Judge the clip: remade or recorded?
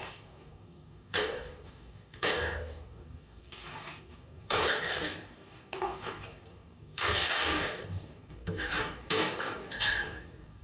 remade